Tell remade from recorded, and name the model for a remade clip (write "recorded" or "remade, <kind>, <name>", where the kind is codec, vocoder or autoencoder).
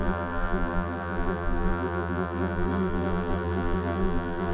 remade, vocoder, BigVGAN v2